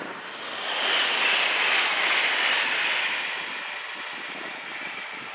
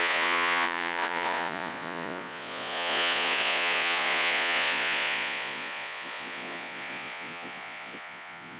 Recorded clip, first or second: first